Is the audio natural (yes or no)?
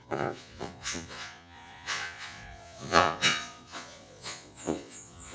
no